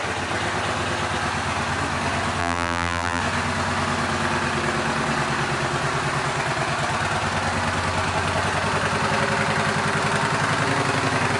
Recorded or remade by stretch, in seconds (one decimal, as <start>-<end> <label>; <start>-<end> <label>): 0.0-2.4 recorded; 2.4-3.2 remade; 3.2-11.4 recorded